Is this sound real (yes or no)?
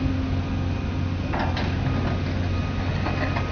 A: yes